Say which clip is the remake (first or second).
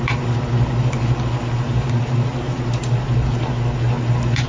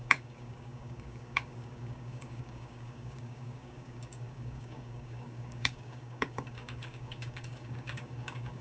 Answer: second